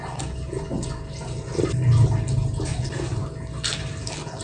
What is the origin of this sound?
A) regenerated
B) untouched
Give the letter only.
B